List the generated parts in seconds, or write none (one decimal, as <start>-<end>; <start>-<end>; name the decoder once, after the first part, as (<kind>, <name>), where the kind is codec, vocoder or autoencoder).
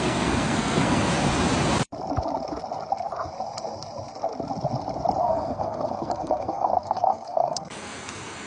0.0-1.1 (codec, SNAC); 5.2-8.5